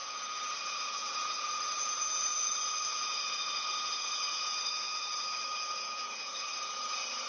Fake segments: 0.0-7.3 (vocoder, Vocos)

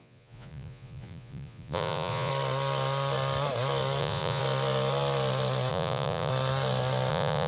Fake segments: 0.0-2.3 (vocoder, Vocos); 4.0-4.4; 5.7-6.3; 7.1-7.5

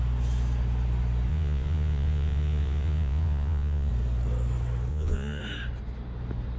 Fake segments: 1.3-3.9 (vocoder, Vocos); 4.9-5.4